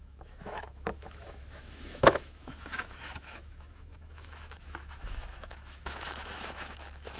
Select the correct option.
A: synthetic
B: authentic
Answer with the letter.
A